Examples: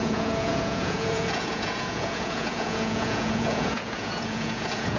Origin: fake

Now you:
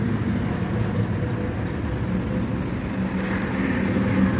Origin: real